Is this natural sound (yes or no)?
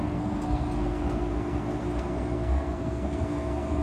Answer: no